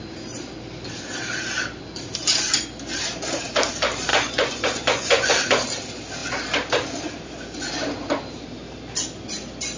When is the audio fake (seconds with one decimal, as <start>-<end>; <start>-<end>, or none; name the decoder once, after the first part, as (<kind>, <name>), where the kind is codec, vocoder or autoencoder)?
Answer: 4.1-5.3 (vocoder, Vocos)